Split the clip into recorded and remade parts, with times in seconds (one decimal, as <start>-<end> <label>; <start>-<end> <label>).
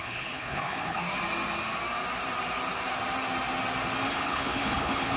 0.0-1.0 remade; 1.0-4.1 recorded; 4.1-5.2 remade